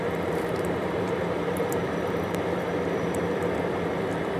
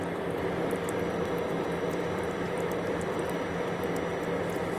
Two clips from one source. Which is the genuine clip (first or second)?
second